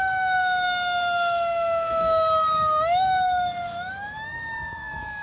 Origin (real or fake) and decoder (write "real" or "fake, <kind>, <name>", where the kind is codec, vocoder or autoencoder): fake, autoencoder, DAC-VAE